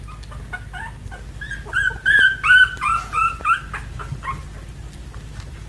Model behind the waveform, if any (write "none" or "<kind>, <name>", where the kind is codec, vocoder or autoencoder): none